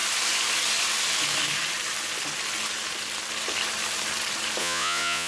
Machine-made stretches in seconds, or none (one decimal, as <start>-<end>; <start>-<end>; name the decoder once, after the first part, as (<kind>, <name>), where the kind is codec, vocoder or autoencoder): 4.6-5.3 (vocoder, Vocos)